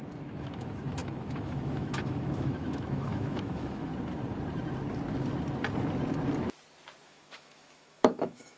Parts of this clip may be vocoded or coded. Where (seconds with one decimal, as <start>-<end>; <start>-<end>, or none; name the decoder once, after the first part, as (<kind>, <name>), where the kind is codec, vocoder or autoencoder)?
0.0-3.9 (autoencoder, DAC-VAE); 7.0-8.6